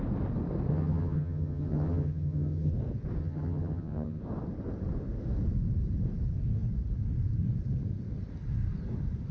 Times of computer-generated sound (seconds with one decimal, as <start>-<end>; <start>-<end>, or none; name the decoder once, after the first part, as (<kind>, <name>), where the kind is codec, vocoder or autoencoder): 0.7-2.7 (vocoder, HiFi-GAN); 3.2-4.2